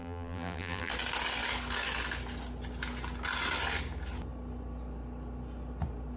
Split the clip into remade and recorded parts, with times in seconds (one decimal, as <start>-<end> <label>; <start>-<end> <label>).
0.0-0.9 remade; 0.9-6.2 recorded